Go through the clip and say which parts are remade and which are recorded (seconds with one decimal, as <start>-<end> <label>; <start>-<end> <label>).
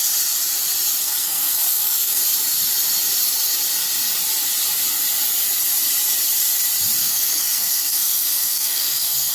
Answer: 0.0-1.0 recorded; 1.0-2.2 remade; 2.2-7.0 recorded; 7.0-9.3 remade